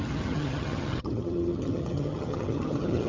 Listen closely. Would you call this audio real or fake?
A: fake